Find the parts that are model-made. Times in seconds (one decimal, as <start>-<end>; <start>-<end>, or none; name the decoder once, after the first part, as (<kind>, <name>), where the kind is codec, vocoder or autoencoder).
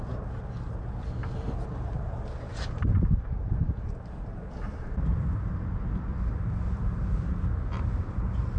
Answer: 1.2-4.8 (vocoder, BigVGAN v2); 6.1-8.1